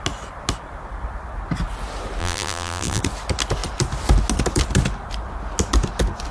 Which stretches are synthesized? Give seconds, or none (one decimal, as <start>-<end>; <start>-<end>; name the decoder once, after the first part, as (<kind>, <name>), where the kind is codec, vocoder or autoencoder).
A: 2.2-3.0 (vocoder, BigVGAN v2)